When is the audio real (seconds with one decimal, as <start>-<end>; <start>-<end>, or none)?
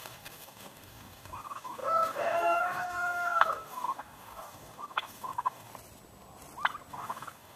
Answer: 5.7-6.9